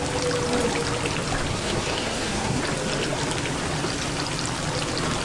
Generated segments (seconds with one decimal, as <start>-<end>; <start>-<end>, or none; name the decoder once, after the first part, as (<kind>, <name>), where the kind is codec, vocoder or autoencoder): 1.5-2.6 (codec, SNAC)